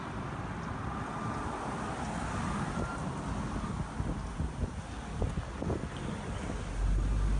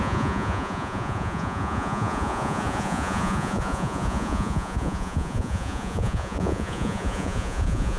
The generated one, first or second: second